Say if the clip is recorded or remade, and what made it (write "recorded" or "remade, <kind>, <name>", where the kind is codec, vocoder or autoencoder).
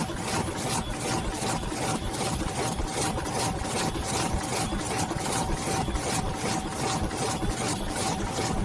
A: recorded